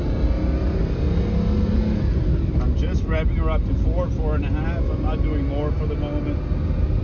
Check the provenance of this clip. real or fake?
real